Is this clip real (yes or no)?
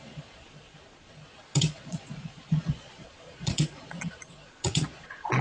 no